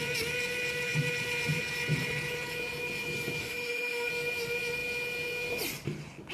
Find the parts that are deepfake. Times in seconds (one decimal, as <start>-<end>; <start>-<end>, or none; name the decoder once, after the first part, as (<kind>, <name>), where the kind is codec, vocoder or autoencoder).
3.4-4.1 (autoencoder, DAC-VAE)